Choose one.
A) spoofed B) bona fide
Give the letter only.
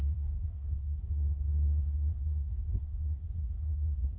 A